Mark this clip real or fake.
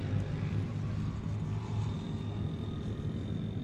real